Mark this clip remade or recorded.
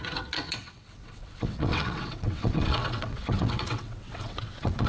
remade